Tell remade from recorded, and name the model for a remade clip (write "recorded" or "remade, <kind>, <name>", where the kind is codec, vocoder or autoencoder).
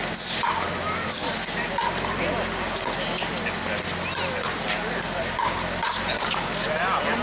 recorded